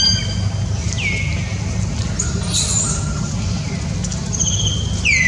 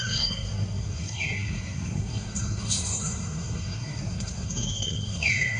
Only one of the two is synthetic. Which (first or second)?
second